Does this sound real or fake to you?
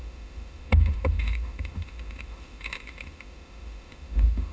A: fake